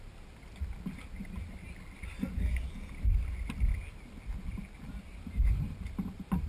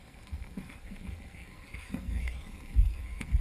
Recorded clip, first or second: first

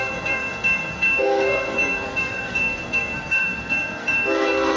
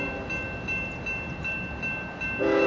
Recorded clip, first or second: second